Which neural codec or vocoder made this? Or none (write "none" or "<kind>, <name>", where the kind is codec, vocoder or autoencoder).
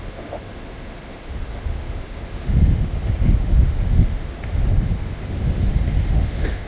autoencoder, DAC-VAE